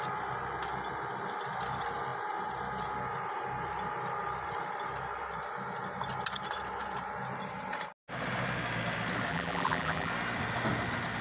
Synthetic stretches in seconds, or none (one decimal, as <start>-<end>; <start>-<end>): 9.3-10.1

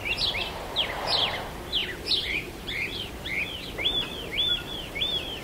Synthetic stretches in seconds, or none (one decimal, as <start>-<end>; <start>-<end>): 0.4-1.2; 1.8-3.1; 4.3-5.0

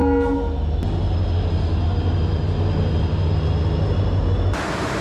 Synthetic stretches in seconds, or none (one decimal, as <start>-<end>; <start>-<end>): none

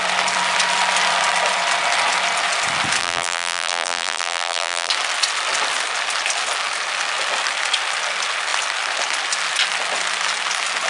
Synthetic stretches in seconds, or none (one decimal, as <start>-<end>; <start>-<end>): 3.0-4.9

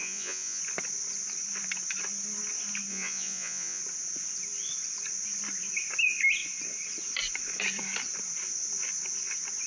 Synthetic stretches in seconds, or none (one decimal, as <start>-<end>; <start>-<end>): 0.0-0.6; 2.9-3.8

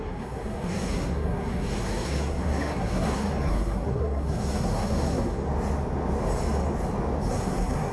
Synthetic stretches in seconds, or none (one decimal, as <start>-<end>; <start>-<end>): 0.0-5.4; 7.3-7.9

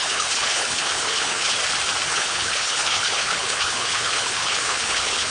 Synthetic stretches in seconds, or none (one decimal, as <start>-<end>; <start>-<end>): 0.0-1.6; 2.1-5.3

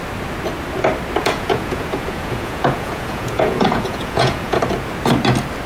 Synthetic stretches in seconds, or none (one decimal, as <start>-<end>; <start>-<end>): 1.2-4.6